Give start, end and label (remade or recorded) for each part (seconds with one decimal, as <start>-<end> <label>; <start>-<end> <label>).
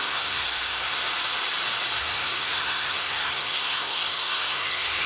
0.0-1.0 remade; 1.0-2.0 recorded; 2.0-5.1 remade